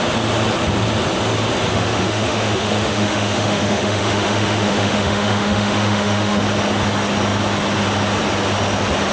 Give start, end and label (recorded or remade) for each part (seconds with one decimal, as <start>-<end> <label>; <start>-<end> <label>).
0.0-1.7 recorded; 1.7-6.4 remade; 6.4-9.1 recorded